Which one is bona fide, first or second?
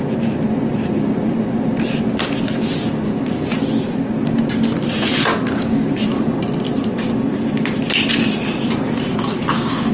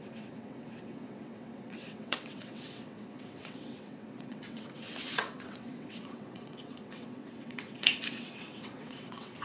first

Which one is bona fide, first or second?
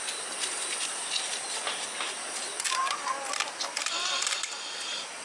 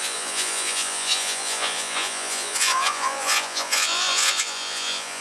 first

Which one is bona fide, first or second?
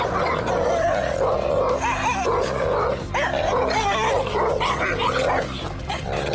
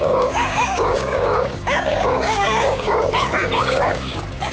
first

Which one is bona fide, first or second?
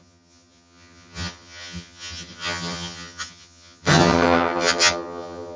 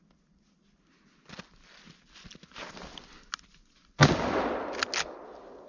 second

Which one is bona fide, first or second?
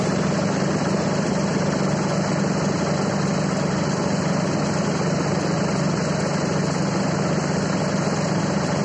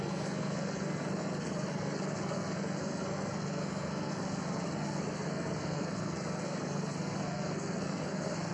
first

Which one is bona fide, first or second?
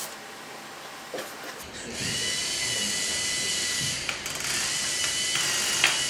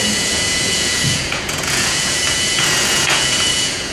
first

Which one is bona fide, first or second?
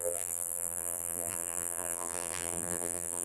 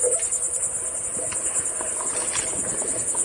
second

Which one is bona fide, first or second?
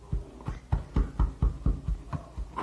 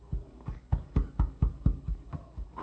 first